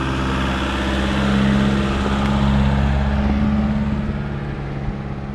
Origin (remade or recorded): recorded